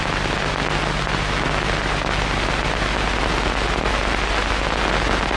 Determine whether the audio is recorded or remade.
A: recorded